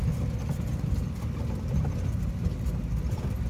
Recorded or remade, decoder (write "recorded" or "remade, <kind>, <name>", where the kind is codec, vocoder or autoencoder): recorded